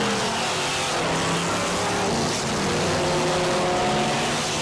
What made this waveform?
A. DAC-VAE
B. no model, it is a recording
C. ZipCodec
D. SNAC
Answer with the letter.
B